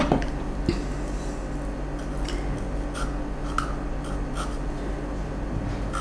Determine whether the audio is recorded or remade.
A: recorded